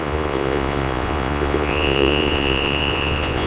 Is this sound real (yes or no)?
no